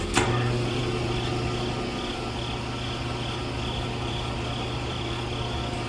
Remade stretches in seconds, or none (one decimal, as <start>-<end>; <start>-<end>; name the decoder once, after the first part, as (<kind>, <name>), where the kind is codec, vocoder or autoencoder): none